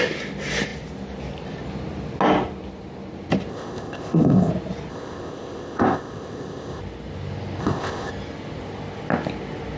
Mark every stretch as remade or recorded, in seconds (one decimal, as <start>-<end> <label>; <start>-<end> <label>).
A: 0.0-3.5 recorded; 3.5-4.5 remade; 4.5-4.9 recorded; 4.9-6.8 remade; 6.8-7.6 recorded; 7.6-8.1 remade; 8.1-9.8 recorded